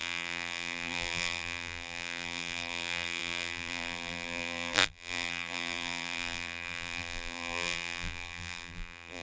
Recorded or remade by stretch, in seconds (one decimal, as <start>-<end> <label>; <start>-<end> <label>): 0.0-9.2 remade